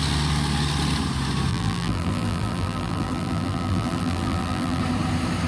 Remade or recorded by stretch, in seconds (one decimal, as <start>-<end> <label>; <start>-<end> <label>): 0.0-1.5 recorded; 1.5-4.8 remade; 4.8-5.5 recorded